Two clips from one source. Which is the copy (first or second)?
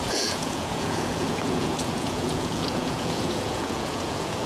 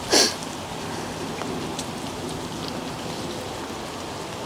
first